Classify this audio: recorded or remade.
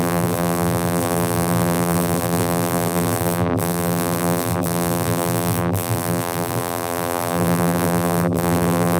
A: remade